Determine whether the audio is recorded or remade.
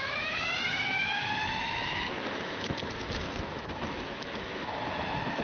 remade